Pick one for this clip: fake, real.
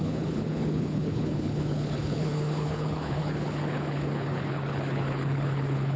fake